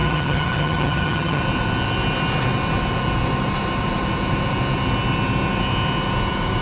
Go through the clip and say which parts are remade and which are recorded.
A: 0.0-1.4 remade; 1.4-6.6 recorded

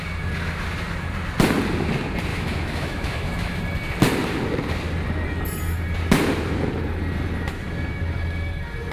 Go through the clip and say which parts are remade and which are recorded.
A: 0.0-2.3 recorded; 2.3-3.6 remade; 3.6-8.9 recorded

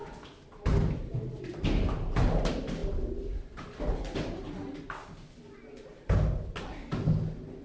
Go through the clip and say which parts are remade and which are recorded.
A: 0.0-7.6 recorded

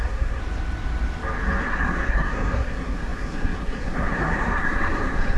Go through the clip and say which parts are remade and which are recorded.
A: 0.0-0.4 remade; 0.4-1.6 recorded; 1.6-5.4 remade

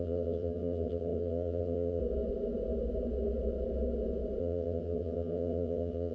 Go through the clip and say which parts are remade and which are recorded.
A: 0.0-2.0 remade; 2.0-4.4 recorded; 4.4-6.1 remade

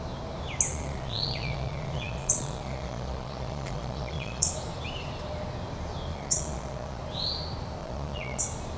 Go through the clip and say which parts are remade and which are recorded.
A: 0.0-0.7 recorded; 0.7-4.5 remade; 4.5-6.1 recorded; 6.1-7.0 remade; 7.0-7.8 recorded; 7.8-8.4 remade; 8.4-8.8 recorded

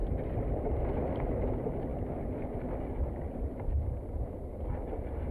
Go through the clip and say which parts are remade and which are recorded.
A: 0.0-1.9 recorded; 1.9-3.1 remade; 3.1-5.3 recorded